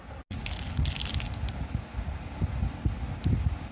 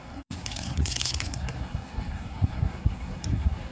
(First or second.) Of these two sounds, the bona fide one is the first